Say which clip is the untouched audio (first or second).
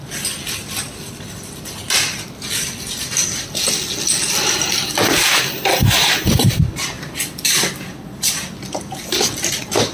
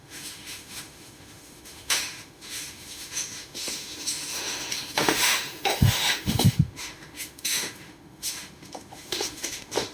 first